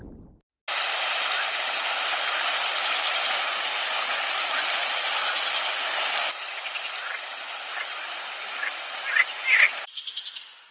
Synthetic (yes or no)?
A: no